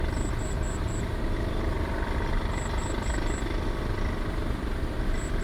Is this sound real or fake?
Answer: real